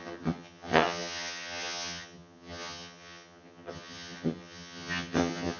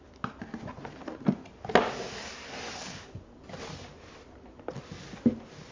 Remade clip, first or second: first